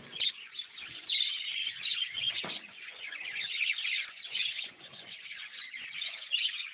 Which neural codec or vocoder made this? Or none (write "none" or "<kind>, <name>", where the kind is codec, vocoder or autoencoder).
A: vocoder, Vocos